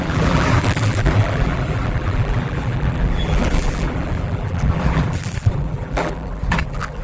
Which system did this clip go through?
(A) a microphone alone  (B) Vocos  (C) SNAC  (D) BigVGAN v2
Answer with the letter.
D